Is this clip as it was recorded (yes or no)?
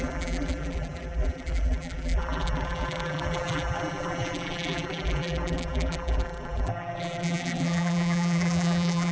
no